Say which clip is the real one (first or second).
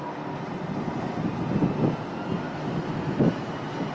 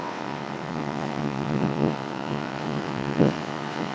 first